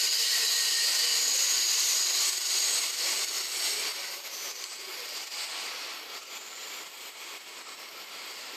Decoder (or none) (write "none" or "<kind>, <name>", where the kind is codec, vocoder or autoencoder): vocoder, BigVGAN v2